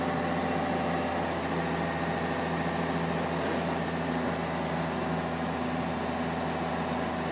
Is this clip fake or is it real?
real